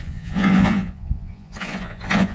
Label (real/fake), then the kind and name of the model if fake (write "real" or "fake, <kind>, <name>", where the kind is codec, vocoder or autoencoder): fake, vocoder, Vocos